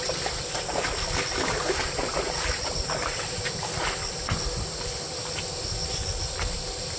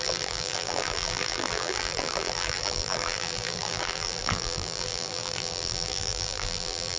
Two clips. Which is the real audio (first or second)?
first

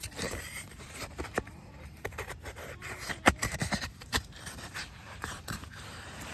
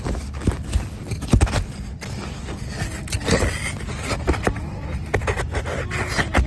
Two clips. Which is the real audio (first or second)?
second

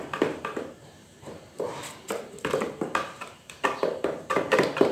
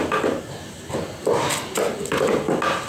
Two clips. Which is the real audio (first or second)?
second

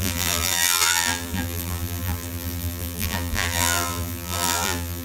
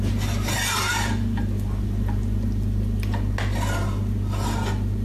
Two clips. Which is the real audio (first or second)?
second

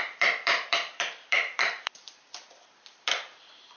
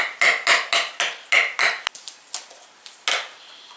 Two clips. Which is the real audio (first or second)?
second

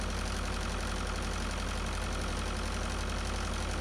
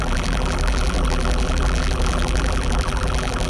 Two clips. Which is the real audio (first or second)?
first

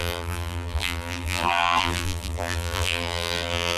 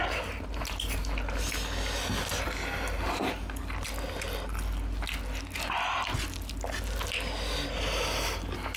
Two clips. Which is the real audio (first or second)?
second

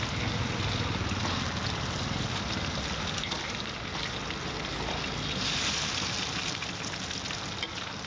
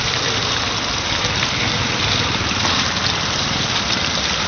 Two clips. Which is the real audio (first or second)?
first